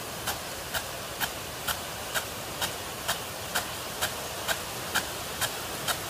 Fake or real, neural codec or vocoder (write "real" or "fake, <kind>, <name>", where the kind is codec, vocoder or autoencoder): real